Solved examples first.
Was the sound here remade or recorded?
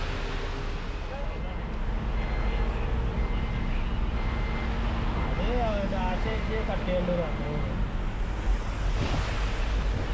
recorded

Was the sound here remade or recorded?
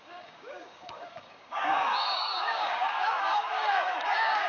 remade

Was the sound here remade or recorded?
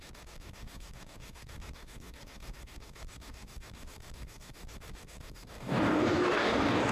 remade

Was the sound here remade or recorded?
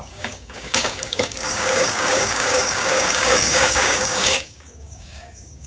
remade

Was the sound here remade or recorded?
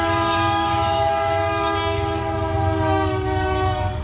remade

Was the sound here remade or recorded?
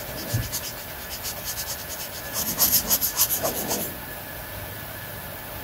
recorded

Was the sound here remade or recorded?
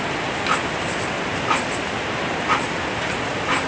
recorded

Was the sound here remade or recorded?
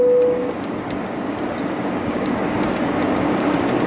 remade